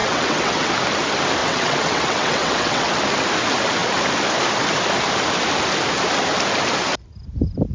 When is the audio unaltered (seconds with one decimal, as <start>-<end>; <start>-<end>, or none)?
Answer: 0.7-1.4; 2.9-7.7